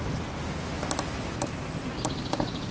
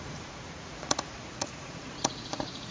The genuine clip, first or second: first